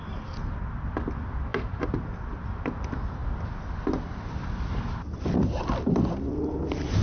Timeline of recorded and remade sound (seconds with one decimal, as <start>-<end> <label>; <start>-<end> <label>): 0.0-7.0 recorded